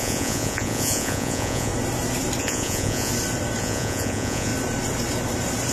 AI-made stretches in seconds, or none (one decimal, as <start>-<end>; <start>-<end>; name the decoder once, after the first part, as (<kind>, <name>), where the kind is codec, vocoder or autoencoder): 0.0-1.7 (vocoder, Vocos); 2.4-3.1; 3.6-4.5